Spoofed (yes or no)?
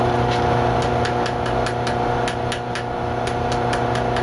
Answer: no